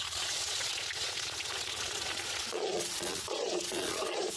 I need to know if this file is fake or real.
fake